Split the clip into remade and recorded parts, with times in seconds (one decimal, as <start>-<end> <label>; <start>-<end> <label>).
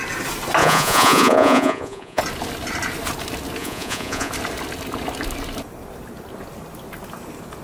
0.0-0.6 recorded; 0.6-2.2 remade; 2.2-3.6 recorded; 3.6-4.3 remade; 4.3-7.6 recorded